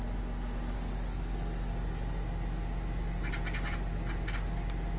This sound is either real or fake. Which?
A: real